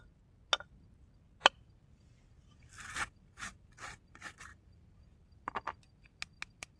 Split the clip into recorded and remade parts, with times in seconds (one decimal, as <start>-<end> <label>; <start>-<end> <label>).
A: 0.0-6.8 recorded